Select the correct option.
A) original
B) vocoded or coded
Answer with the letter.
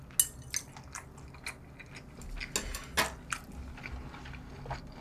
A